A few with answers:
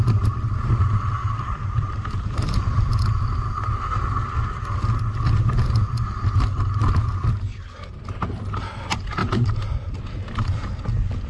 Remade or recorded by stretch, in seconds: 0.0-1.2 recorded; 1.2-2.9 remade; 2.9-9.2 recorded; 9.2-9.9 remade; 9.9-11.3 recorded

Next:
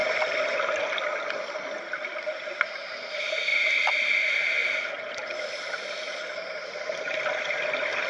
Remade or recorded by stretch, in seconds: 0.0-8.1 recorded

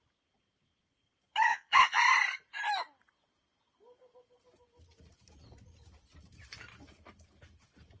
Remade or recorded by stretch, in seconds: 0.0-1.5 recorded; 1.5-2.0 remade; 2.0-8.0 recorded

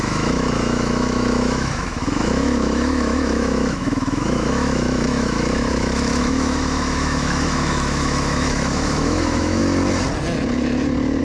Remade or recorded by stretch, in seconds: 0.0-9.6 remade; 9.6-11.2 recorded

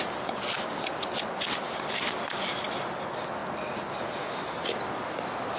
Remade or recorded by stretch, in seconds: 0.0-5.6 recorded

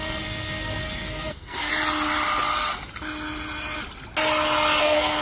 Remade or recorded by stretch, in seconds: 0.0-1.7 remade; 1.7-4.8 recorded; 4.8-5.2 remade

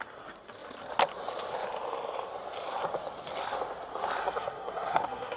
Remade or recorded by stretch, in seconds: 0.0-4.2 recorded; 4.2-5.4 remade

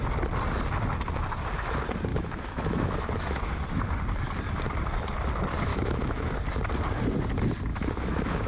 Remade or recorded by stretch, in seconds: 0.0-2.1 recorded; 2.1-3.5 remade; 3.5-5.7 recorded; 5.7-6.3 remade; 6.3-7.7 recorded; 7.7-8.5 remade